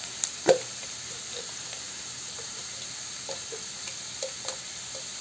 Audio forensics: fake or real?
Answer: real